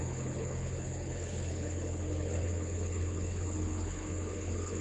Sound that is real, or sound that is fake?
fake